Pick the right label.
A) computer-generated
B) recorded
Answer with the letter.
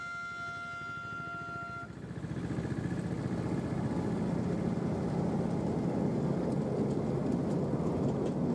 B